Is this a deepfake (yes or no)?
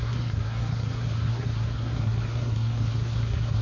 yes